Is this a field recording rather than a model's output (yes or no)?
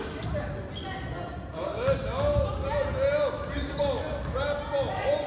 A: yes